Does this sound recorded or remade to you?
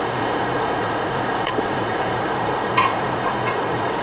remade